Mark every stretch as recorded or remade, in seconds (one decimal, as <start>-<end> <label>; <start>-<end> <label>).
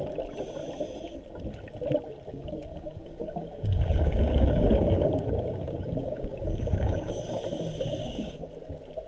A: 0.0-2.3 recorded; 2.3-7.2 remade; 7.2-8.0 recorded; 8.0-8.5 remade; 8.5-9.1 recorded